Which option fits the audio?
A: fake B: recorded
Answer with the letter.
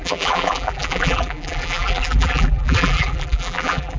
A